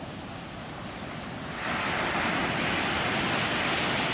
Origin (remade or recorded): recorded